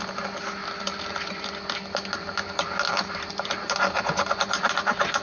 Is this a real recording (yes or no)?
yes